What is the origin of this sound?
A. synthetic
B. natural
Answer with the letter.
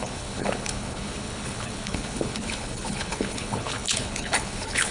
A